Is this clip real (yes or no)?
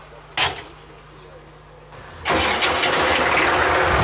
yes